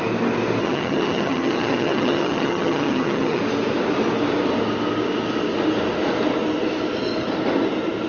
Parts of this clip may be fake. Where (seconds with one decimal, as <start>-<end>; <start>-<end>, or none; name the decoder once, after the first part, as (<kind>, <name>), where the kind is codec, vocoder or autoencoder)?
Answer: 0.6-3.4 (vocoder, HiFi-GAN)